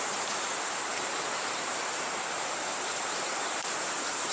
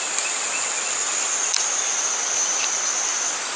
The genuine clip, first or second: second